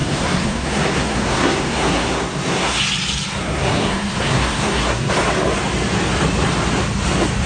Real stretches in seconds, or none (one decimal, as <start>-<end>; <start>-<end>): 2.8-3.4; 5.1-7.5